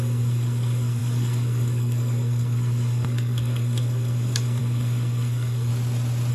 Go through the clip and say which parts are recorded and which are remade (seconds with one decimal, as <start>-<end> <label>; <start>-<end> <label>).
0.0-5.7 remade; 5.7-6.3 recorded